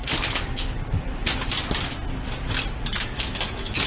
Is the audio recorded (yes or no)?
yes